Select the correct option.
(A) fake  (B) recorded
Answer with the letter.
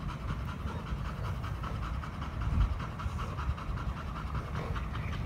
B